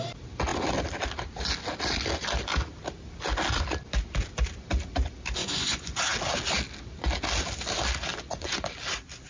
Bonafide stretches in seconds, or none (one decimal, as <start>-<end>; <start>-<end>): 0.0-5.4; 6.0-8.1; 8.8-9.3